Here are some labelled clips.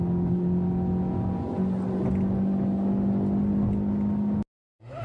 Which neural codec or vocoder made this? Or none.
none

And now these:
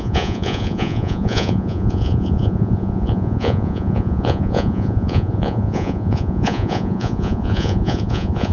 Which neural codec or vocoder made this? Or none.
vocoder, Vocos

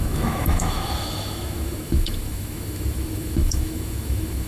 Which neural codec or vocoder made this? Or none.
autoencoder, DAC-VAE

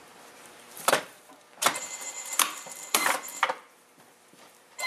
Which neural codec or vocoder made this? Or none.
vocoder, BigVGAN v2